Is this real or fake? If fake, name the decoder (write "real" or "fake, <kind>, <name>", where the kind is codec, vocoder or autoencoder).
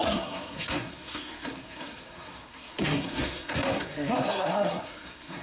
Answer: fake, codec, SNAC